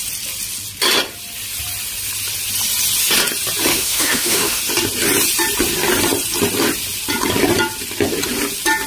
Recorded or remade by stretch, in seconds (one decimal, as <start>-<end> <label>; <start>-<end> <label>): 0.0-3.7 recorded; 3.7-4.6 remade; 4.6-8.9 recorded